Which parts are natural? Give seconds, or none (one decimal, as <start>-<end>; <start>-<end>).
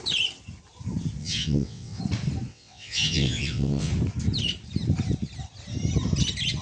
0.0-1.2; 2.0-2.5; 3.9-6.6